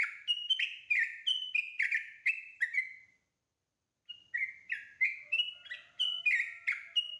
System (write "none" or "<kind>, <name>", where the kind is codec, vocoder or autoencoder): none